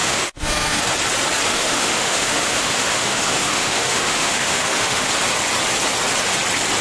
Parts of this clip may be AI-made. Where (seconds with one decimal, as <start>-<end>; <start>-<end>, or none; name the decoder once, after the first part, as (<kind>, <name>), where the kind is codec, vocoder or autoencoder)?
0.0-0.8 (autoencoder, DAC-VAE); 1.5-5.1

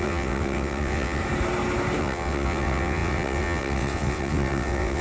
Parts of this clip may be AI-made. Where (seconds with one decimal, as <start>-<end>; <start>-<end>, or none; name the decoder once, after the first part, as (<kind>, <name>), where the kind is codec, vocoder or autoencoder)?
0.0-1.2 (vocoder, WaveNeXt); 2.0-5.0

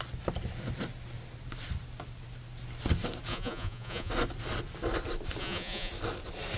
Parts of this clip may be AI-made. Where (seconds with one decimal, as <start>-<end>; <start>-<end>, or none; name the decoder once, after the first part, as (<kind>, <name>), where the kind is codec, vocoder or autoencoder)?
3.3-4.1 (vocoder, Vocos); 5.4-5.9

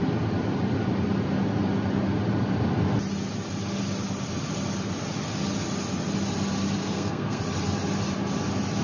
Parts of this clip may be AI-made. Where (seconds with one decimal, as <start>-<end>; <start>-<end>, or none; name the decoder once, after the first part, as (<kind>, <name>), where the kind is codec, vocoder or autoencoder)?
6.8-7.4 (codec, SNAC)